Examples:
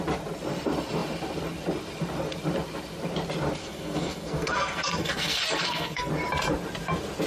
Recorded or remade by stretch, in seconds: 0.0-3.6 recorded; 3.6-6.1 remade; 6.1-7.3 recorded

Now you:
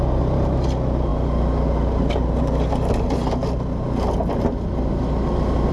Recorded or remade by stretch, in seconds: 0.0-5.7 recorded

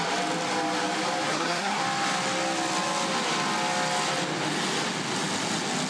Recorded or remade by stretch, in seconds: 0.0-1.3 recorded; 1.3-1.8 remade; 1.8-5.9 recorded